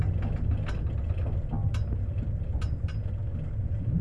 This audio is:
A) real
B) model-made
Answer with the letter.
A